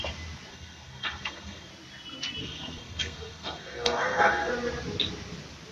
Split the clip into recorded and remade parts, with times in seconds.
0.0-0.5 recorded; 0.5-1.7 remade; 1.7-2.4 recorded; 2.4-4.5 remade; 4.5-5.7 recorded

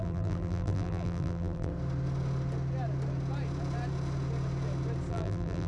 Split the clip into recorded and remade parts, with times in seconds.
0.0-1.7 remade; 1.7-5.1 recorded; 5.1-5.7 remade

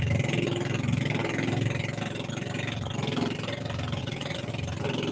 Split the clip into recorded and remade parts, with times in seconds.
0.0-4.0 recorded; 4.0-4.5 remade; 4.5-5.1 recorded

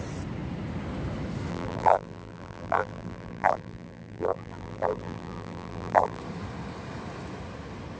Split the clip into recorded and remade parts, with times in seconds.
0.0-1.5 recorded; 1.5-6.2 remade; 6.2-8.0 recorded